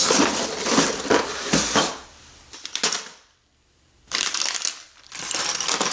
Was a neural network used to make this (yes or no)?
yes